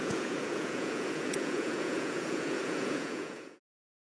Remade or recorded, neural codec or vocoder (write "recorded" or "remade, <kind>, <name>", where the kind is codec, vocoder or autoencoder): remade, vocoder, Vocos